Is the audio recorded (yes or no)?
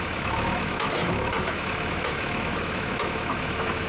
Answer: no